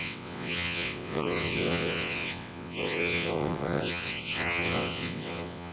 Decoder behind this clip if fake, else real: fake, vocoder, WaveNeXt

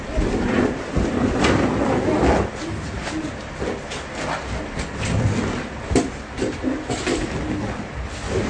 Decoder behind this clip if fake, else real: real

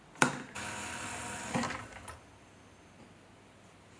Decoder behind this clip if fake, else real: real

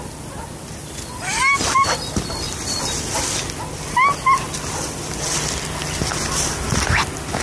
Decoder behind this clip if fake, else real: real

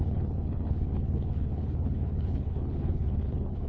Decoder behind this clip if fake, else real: fake, codec, HILCodec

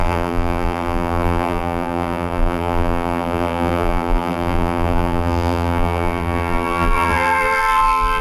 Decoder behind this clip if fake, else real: fake, vocoder, BigVGAN v2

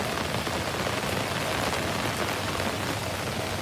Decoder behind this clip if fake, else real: real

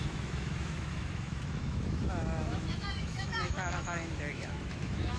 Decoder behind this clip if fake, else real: fake, autoencoder, DAC-VAE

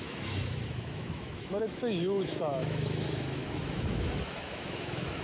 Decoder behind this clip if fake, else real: fake, autoencoder, DAC-VAE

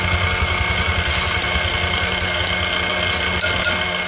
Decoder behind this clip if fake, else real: real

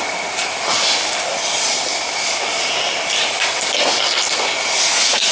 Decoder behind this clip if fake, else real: real